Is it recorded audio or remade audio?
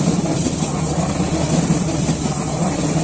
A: remade